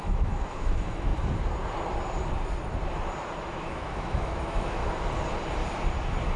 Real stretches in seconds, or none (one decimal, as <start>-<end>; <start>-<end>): 1.1-3.5; 4.8-6.4